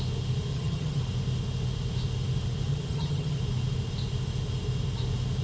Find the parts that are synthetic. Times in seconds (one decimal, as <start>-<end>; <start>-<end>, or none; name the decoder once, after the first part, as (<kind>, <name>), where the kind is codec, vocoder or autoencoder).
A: 0.5-1.0 (vocoder, HiFi-GAN); 2.7-3.4